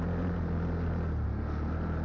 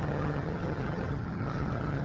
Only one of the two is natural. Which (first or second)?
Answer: first